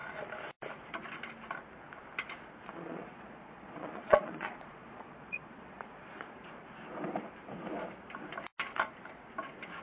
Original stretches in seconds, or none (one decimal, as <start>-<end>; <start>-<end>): 0.0-2.6; 6.4-9.8